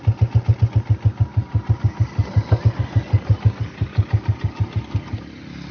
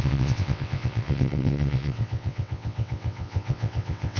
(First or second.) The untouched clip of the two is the first